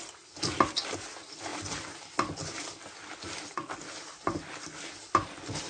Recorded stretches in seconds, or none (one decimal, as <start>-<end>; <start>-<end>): 0.0-5.7